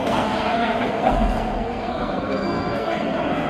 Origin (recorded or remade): remade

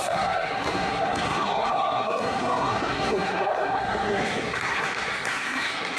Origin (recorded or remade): remade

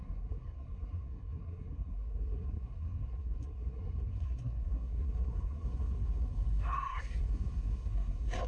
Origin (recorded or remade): remade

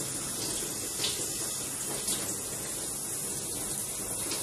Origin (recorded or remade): recorded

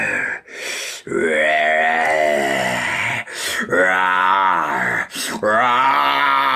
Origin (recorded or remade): recorded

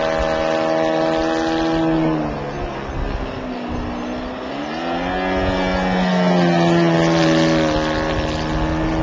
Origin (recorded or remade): recorded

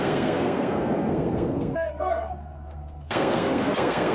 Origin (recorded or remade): remade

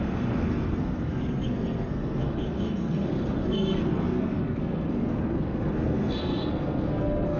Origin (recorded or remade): remade